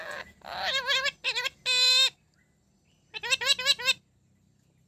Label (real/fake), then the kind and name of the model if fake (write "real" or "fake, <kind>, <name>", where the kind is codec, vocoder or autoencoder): real